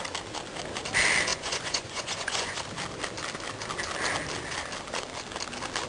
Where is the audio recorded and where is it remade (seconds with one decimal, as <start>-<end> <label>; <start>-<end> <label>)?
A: 0.0-1.3 recorded; 1.3-2.6 remade; 2.6-5.9 recorded